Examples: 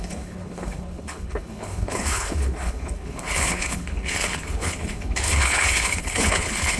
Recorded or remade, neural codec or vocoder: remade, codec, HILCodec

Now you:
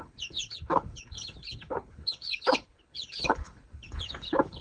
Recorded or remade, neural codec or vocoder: remade, codec, HILCodec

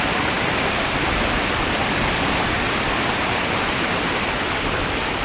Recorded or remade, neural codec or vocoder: recorded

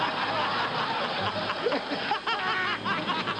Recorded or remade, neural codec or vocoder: recorded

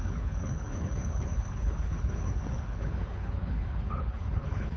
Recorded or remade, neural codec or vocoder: remade, codec, HILCodec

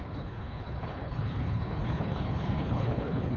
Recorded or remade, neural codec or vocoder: remade, codec, HILCodec